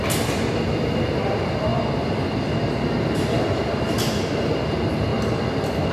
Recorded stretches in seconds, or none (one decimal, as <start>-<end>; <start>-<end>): 0.0-5.9